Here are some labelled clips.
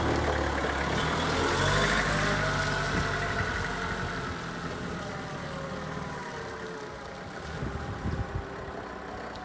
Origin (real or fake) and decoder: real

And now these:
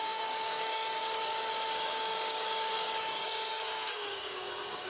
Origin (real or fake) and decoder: fake, codec, DAC